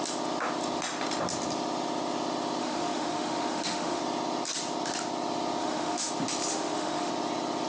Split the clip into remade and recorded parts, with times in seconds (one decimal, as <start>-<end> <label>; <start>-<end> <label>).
0.0-2.6 recorded; 2.6-4.0 remade; 4.0-5.6 recorded; 5.6-6.1 remade; 6.1-6.5 recorded; 6.5-7.1 remade; 7.1-7.7 recorded

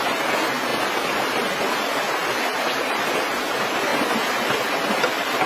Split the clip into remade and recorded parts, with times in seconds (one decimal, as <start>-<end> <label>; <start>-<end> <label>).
0.0-5.5 recorded

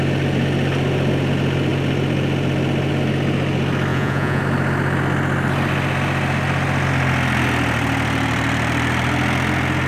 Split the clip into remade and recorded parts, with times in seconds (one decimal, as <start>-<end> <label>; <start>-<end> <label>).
0.0-3.9 recorded; 3.9-4.4 remade; 4.4-9.9 recorded

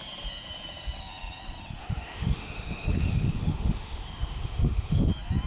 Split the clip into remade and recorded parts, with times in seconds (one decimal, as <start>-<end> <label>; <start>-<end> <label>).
0.0-1.8 recorded; 1.8-5.1 remade; 5.1-5.5 recorded

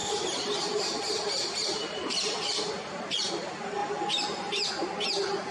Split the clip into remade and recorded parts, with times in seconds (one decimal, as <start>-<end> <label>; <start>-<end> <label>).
0.0-3.3 remade; 3.3-3.8 recorded; 3.8-4.7 remade; 4.7-5.5 recorded

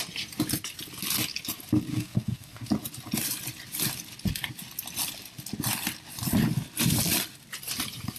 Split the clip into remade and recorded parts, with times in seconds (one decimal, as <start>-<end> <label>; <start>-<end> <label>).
0.0-1.9 recorded; 1.9-2.7 remade; 2.7-8.2 recorded